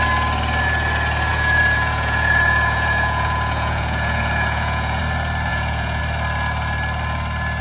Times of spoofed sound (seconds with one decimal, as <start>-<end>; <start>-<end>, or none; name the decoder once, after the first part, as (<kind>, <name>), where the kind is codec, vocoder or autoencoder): 1.3-5.0 (vocoder, Vocos); 5.5-6.0